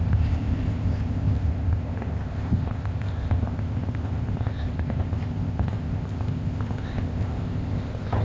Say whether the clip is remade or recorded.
remade